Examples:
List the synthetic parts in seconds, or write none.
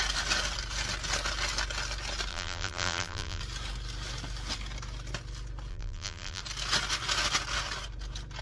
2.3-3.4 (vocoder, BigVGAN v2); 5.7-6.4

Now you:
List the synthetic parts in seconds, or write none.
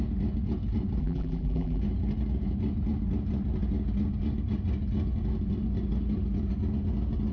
1.0-1.8 (vocoder, BigVGAN v2)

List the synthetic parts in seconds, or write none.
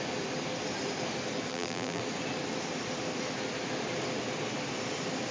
1.5-2.0 (vocoder, BigVGAN v2)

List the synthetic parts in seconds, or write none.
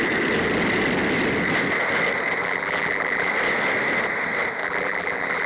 2.4-3.3 (vocoder, BigVGAN v2); 4.6-5.5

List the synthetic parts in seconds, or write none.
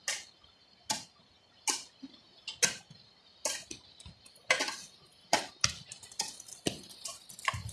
5.1-6.5 (vocoder, BigVGAN v2)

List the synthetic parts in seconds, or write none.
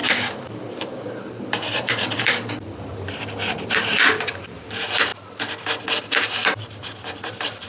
0.0-5.1 (vocoder, BigVGAN v2); 6.0-7.7